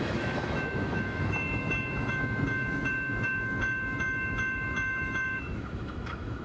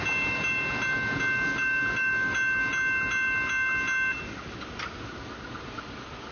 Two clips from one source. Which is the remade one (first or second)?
first